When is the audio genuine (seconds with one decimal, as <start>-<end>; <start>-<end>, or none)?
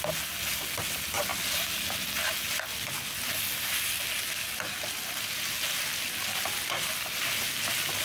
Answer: 0.0-8.0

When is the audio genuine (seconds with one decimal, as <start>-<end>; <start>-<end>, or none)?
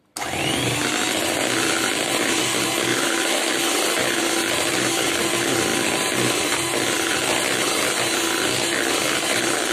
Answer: 0.0-2.9; 3.5-9.7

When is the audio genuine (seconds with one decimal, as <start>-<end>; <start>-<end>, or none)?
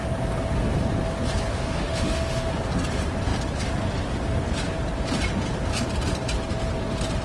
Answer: 0.0-1.5; 2.5-7.2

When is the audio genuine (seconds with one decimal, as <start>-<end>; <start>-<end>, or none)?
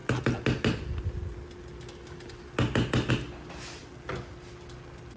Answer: 0.0-5.2